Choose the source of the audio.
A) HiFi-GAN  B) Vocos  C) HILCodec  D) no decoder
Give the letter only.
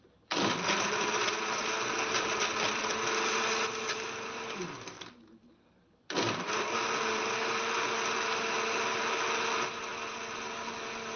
D